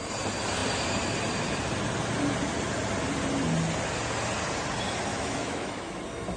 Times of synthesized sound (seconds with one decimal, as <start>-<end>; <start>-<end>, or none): 5.1-6.0